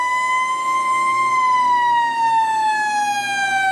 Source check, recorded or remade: recorded